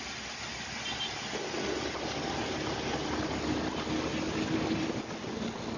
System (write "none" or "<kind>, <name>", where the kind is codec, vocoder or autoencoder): none